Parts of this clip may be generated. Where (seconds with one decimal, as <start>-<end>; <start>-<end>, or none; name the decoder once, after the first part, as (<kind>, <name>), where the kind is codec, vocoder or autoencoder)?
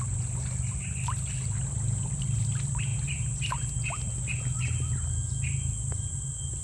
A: none